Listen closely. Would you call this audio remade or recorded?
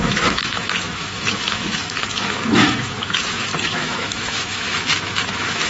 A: remade